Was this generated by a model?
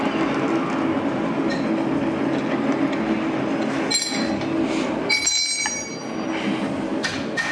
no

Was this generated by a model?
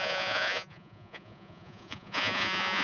yes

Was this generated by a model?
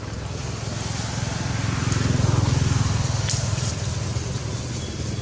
no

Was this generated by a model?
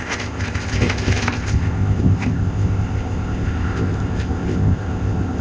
yes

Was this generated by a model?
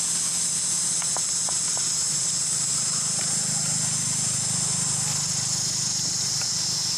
no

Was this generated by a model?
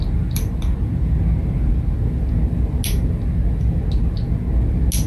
no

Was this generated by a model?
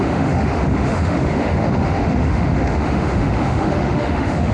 yes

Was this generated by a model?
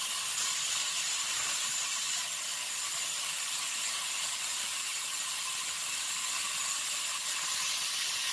no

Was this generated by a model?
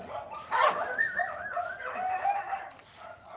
no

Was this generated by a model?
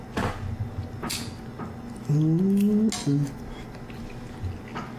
no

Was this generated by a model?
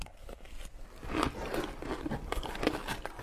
no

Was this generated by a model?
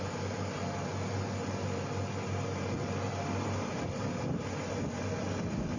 no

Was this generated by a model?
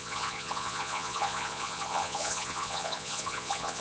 yes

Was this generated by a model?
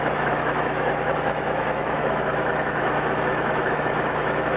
yes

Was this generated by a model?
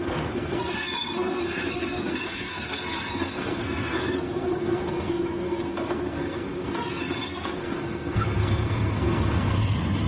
yes